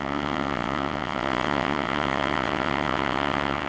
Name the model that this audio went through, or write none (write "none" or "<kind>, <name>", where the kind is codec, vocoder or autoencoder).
vocoder, WaveNeXt